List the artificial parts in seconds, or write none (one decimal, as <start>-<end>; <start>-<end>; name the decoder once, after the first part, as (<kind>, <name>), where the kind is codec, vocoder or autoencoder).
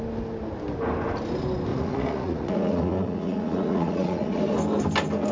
1.7-4.4 (vocoder, Vocos)